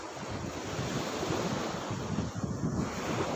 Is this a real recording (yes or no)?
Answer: yes